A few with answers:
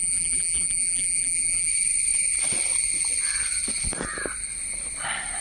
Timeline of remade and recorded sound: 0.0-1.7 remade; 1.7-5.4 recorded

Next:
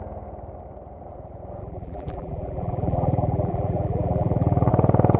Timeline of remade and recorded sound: 0.0-1.6 recorded; 1.6-4.7 remade; 4.7-5.2 recorded

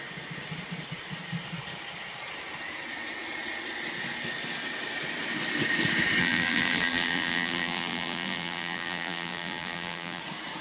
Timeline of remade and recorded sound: 0.0-6.2 recorded; 6.2-10.2 remade; 10.2-10.6 recorded

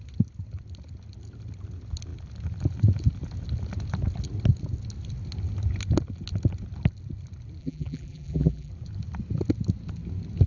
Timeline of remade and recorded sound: 0.0-7.6 recorded; 7.6-8.7 remade; 8.7-10.5 recorded

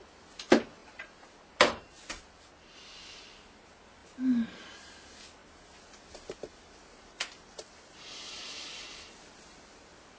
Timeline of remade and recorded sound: 0.0-0.8 recorded; 0.8-1.5 remade; 1.5-4.0 recorded; 4.0-5.0 remade; 5.0-10.2 recorded

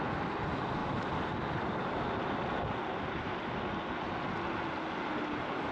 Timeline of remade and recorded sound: 0.0-5.7 recorded